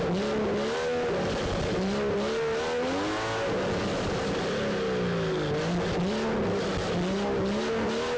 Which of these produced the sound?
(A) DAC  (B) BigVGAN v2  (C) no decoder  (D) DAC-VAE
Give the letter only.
C